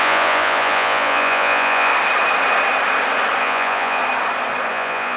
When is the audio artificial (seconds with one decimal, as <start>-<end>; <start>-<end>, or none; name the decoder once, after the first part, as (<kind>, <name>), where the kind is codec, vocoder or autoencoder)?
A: 0.0-1.9 (vocoder, Vocos); 3.4-4.0; 4.7-5.2